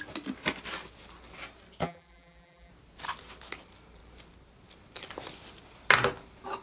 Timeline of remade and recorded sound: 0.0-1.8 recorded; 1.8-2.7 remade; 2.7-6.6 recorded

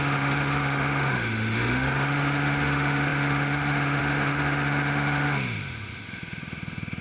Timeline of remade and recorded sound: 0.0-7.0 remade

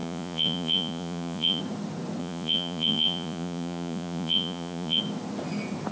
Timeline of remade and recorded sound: 0.0-1.6 remade; 1.6-2.2 recorded; 2.2-5.0 remade; 5.0-5.9 recorded

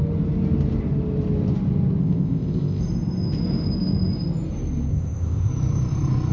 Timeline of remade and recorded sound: 0.0-2.0 recorded; 2.0-2.8 remade; 2.8-4.9 recorded; 4.9-5.5 remade; 5.5-6.3 recorded

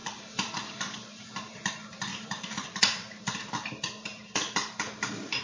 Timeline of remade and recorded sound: 0.0-1.6 remade; 1.6-2.1 recorded; 2.1-5.4 remade

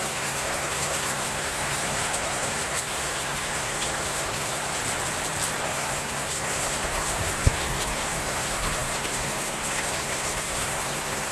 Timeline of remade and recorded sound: 0.0-4.8 remade; 4.8-5.6 recorded; 5.6-11.3 remade